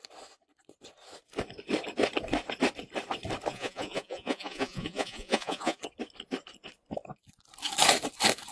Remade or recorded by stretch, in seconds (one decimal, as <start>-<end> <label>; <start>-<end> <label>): 0.0-3.5 recorded; 3.5-5.8 remade; 5.8-8.5 recorded